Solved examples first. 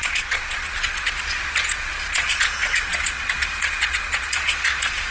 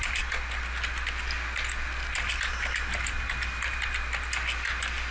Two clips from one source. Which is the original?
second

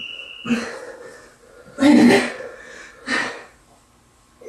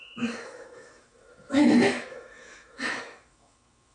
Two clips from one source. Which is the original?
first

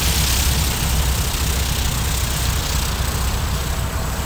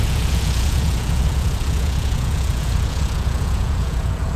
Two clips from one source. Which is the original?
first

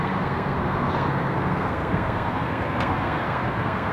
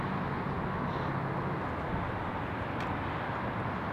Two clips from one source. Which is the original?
second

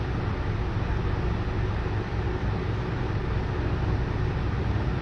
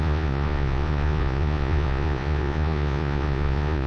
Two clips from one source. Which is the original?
first